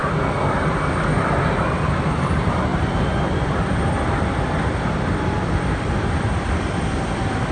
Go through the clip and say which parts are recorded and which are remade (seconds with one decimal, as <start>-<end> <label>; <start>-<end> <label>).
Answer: 0.0-7.5 recorded